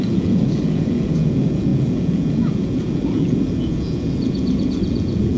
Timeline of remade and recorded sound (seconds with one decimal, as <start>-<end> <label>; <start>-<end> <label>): 0.0-5.4 remade